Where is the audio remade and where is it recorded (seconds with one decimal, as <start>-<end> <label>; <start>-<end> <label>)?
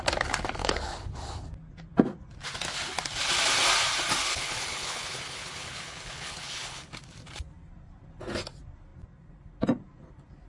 0.0-0.6 recorded; 0.6-1.5 remade; 1.5-4.3 recorded; 4.3-6.9 remade; 6.9-10.5 recorded